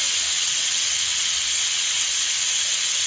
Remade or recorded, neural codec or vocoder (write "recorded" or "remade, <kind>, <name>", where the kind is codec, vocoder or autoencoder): remade, vocoder, WaveNeXt